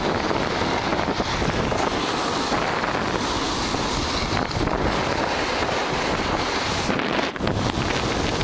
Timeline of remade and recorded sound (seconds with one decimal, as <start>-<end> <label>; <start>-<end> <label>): 0.0-5.6 recorded; 5.6-8.0 remade; 8.0-8.4 recorded